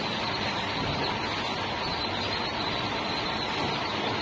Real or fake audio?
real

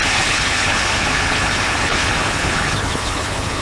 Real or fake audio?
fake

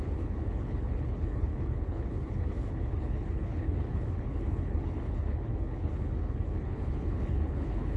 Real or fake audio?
fake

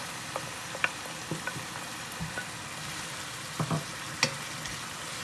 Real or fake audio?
real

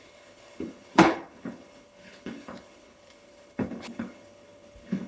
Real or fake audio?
fake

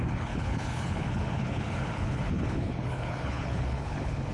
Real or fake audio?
fake